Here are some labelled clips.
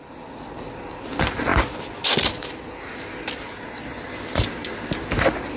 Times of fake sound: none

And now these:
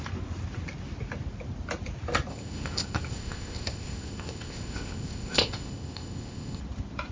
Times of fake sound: 2.3-6.6 (codec, ZipCodec)

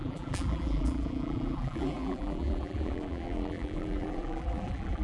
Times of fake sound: 0.0-5.0 (vocoder, BigVGAN v2)

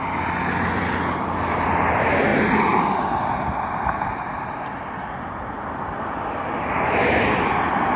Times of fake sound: none

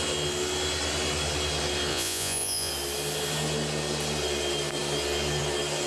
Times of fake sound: 1.9-2.7 (vocoder, Vocos)

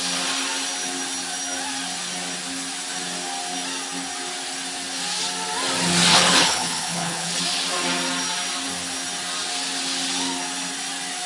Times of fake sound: 6.1-7.4 (codec, HILCodec)